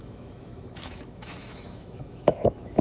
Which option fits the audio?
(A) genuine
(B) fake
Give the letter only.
B